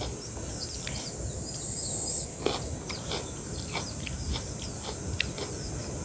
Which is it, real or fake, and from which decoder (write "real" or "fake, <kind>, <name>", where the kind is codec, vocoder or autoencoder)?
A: real